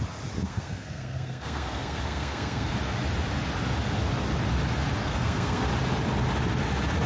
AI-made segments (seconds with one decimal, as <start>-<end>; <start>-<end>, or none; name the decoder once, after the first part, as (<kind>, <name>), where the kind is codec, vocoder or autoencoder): 0.4-2.7 (codec, SNAC); 5.0-5.7